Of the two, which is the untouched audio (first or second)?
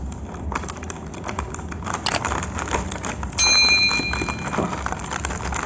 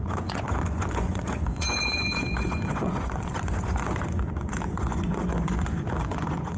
first